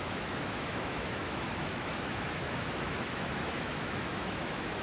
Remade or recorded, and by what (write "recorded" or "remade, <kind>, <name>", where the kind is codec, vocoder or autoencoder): remade, autoencoder, DAC-VAE